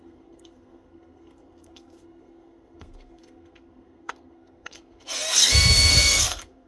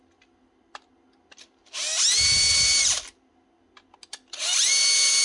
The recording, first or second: second